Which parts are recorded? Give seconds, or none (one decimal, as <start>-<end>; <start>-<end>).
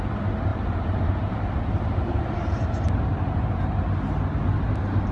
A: 0.0-0.5; 3.6-5.1